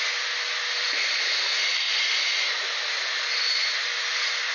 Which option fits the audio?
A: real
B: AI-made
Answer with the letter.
A